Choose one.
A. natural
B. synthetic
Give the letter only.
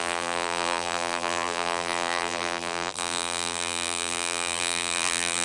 B